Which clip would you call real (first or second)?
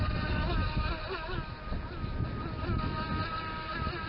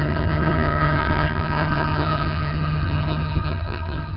first